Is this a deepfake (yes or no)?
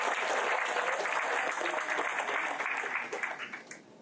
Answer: no